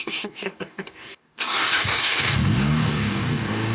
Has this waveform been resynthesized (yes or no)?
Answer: yes